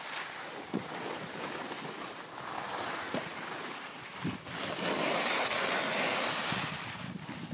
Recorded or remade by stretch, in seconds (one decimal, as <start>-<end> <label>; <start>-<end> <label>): 0.0-7.5 recorded